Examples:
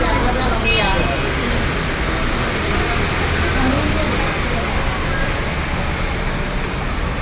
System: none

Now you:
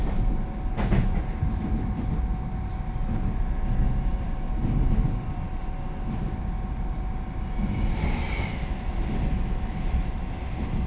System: none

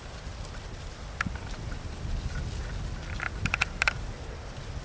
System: none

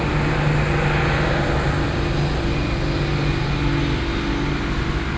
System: none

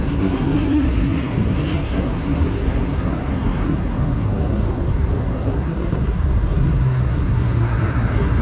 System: codec, SNAC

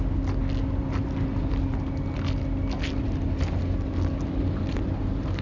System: none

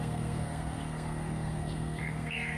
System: codec, SNAC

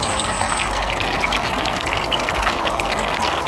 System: codec, SNAC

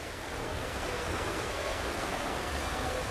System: codec, SNAC